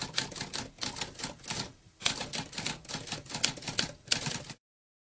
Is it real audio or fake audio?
real